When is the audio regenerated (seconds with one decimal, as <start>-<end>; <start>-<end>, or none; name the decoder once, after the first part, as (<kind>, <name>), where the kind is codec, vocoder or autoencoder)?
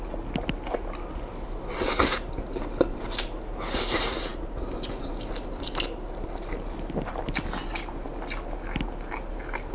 none